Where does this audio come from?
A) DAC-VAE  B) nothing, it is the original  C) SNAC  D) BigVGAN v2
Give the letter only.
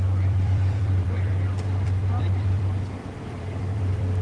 D